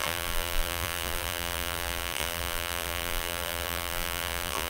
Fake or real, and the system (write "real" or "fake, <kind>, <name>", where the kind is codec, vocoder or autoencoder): fake, vocoder, BigVGAN v2